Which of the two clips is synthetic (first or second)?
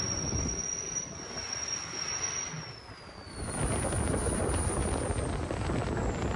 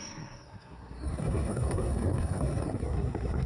second